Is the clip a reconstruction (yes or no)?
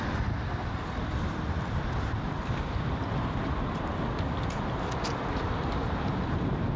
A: no